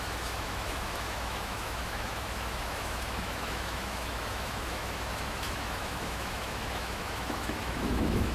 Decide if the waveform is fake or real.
fake